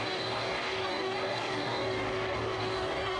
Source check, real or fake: fake